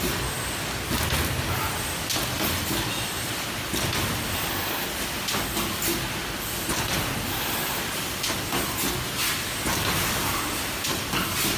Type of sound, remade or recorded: recorded